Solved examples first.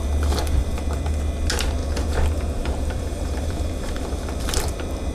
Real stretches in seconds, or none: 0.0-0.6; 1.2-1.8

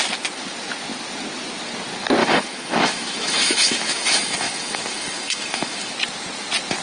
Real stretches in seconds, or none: 0.0-2.2; 5.9-6.8

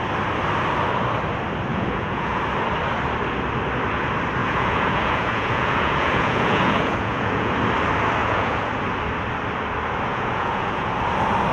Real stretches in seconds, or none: 0.0-1.7; 2.4-4.4; 7.5-8.2; 8.7-10.1; 10.9-11.5

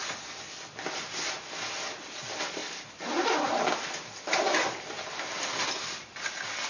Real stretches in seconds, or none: 0.0-6.7

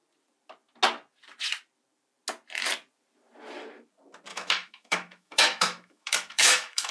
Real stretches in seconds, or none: 0.0-4.3

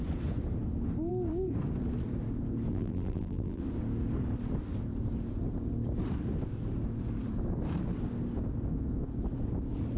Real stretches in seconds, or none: 0.0-2.7; 3.6-10.0